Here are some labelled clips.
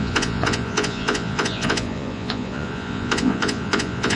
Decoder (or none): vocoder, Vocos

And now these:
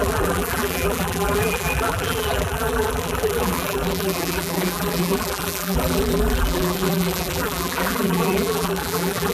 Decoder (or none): vocoder, BigVGAN v2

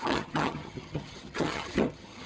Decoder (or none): vocoder, HiFi-GAN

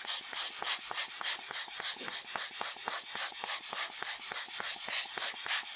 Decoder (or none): none